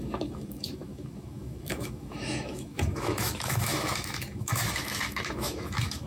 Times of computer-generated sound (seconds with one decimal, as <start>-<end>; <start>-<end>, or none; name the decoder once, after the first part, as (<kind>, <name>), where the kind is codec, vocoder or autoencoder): 0.0-6.1 (autoencoder, DAC-VAE)